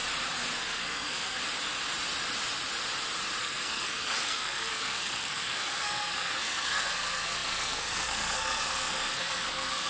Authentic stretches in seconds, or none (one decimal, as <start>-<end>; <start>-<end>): 0.0-0.6; 1.4-3.4